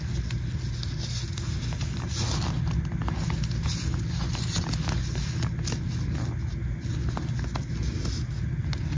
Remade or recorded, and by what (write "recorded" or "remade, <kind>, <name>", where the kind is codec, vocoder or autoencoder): recorded